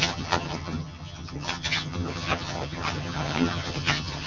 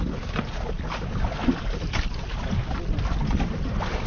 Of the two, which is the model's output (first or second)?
first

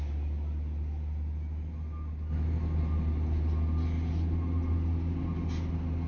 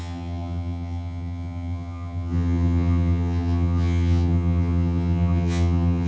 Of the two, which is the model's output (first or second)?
second